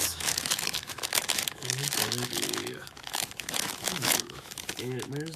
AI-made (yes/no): yes